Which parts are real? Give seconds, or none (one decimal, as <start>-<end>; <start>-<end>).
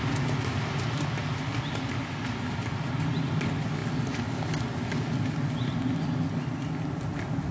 0.0-7.5